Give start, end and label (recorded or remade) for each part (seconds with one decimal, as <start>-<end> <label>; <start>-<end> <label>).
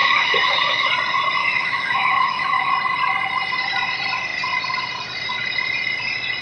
0.0-0.9 remade; 0.9-1.4 recorded; 1.4-2.7 remade; 2.7-6.4 recorded